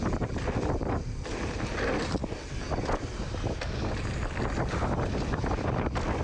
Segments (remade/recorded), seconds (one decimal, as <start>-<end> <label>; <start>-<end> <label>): 0.0-6.2 recorded